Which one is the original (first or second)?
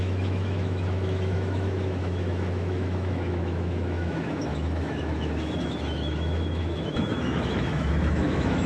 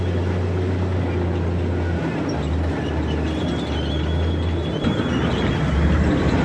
second